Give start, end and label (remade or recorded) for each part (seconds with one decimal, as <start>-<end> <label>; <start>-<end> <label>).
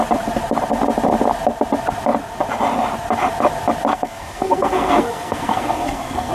0.0-3.9 recorded; 3.9-6.3 remade